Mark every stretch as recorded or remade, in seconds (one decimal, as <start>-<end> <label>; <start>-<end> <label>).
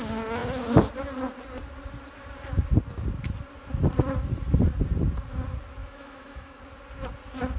0.0-5.8 recorded; 5.8-6.6 remade; 6.6-7.6 recorded